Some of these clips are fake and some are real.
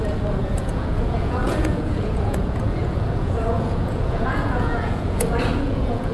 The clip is fake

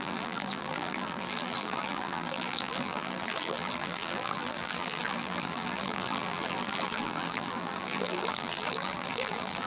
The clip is fake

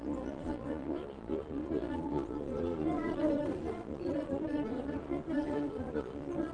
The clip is fake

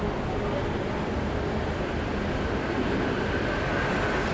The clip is real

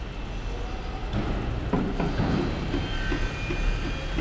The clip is real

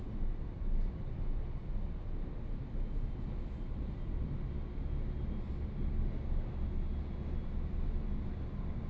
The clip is real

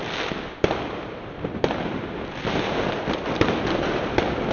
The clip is real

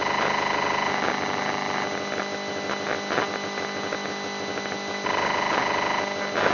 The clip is real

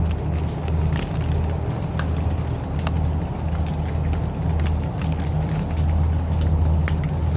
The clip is real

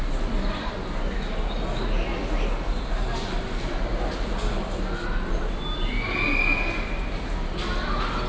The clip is real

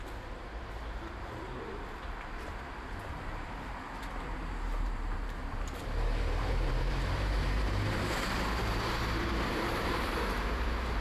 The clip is fake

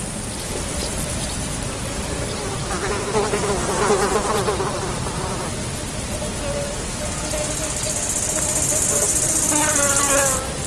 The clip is real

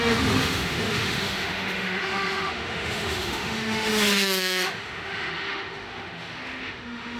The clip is fake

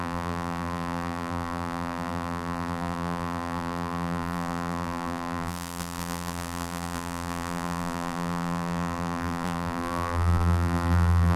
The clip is fake